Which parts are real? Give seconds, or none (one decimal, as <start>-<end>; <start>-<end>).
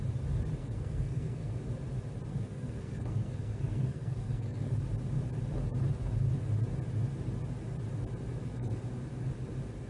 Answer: 0.0-0.6; 1.6-2.3; 4.8-8.4; 8.9-9.9